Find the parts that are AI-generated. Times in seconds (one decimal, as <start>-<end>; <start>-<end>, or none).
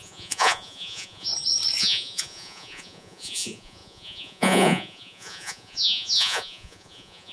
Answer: 0.0-1.3; 1.8-7.3